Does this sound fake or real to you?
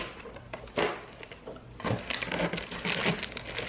real